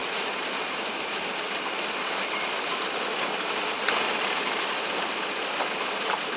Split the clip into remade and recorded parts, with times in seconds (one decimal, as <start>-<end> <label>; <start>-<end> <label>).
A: 0.0-6.4 recorded